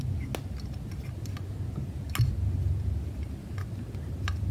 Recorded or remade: recorded